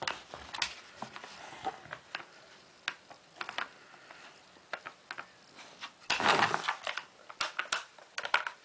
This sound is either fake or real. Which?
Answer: real